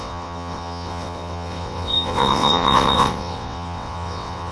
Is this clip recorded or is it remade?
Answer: remade